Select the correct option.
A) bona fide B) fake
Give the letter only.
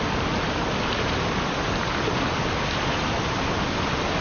A